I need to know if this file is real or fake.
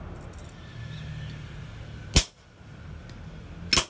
real